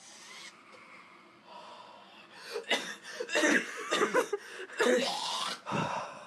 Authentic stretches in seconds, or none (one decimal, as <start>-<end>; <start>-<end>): 0.0-1.1; 4.9-6.3